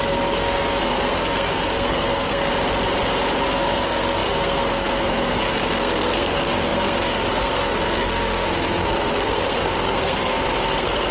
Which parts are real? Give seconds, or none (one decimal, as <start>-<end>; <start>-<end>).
2.5-3.4